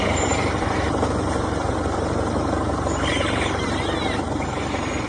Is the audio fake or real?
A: fake